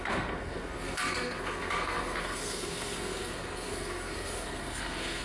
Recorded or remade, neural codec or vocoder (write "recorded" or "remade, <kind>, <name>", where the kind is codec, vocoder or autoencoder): remade, codec, SNAC